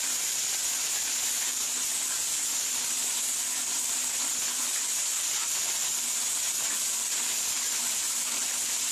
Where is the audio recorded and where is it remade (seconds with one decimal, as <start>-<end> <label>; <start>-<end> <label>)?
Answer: 0.0-1.6 remade; 1.6-2.7 recorded; 2.7-3.4 remade; 3.4-4.6 recorded; 4.6-8.9 remade